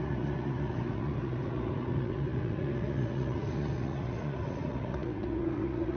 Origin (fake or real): fake